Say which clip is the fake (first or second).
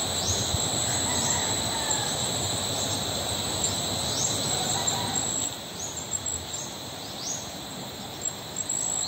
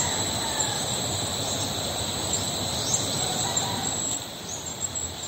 second